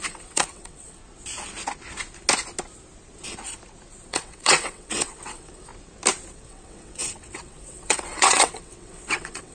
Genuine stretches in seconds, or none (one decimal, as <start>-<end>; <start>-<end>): 1.0-4.1; 5.7-6.3